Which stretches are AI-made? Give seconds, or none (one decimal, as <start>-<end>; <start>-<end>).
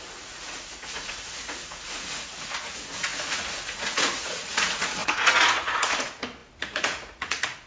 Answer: 0.0-7.7